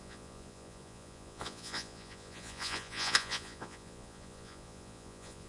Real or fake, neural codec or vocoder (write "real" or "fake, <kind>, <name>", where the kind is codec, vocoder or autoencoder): fake, vocoder, Vocos